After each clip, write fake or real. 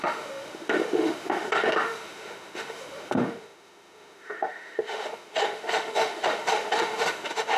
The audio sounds fake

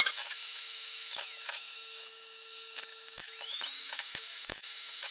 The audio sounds fake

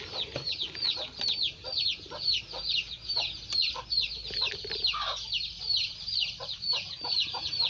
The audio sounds real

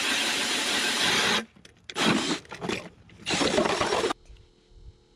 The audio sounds real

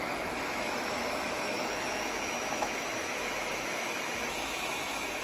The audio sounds fake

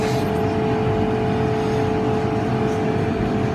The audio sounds real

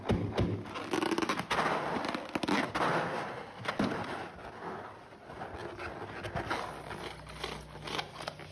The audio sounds real